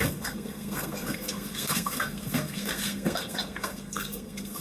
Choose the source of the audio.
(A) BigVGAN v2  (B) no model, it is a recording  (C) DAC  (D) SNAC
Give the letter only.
D